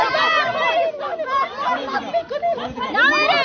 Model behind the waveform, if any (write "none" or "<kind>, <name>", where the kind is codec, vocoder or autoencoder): none